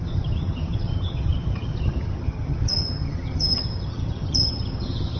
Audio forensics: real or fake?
fake